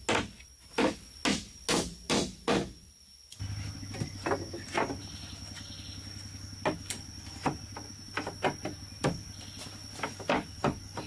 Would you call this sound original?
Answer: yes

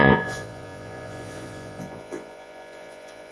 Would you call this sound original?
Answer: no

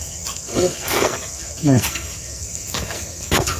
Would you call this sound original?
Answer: no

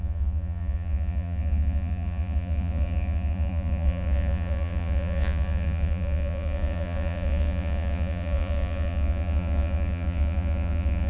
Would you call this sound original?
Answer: no